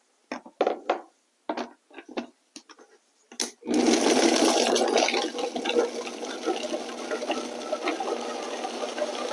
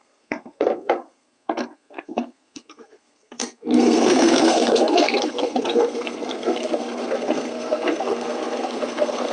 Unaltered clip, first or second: first